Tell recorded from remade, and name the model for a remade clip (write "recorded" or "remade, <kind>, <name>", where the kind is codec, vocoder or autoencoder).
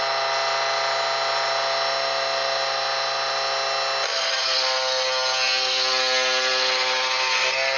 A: recorded